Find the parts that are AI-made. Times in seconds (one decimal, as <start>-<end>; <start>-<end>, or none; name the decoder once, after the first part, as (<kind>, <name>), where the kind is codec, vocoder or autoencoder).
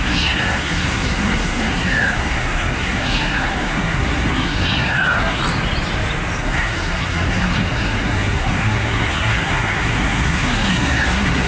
0.0-5.4 (codec, SNAC); 6.4-11.5